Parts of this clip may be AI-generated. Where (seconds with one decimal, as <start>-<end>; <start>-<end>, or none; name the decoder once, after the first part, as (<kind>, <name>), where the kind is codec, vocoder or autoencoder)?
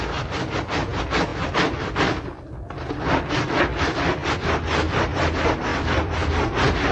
5.7-6.3 (vocoder, BigVGAN v2)